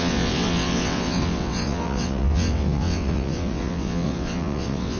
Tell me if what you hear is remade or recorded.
remade